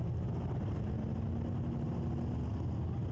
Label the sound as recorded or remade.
recorded